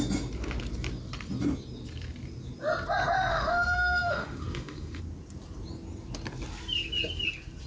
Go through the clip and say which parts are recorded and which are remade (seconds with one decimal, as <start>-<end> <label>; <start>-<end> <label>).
0.0-3.3 recorded; 3.3-5.0 remade; 5.0-7.7 recorded